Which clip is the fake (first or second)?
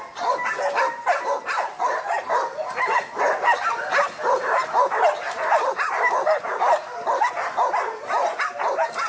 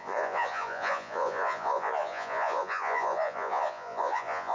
second